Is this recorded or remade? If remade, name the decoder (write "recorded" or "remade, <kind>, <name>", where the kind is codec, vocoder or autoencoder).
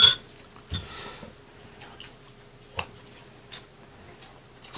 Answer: recorded